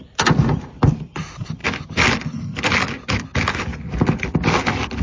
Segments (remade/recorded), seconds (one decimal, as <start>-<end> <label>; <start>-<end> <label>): 0.0-5.0 recorded